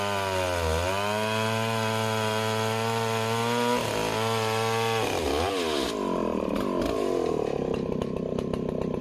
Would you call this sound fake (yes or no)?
no